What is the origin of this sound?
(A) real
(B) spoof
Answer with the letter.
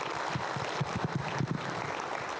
A